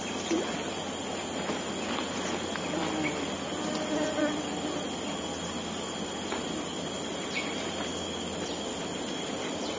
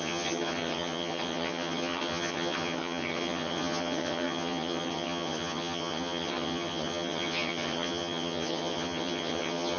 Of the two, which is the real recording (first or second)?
first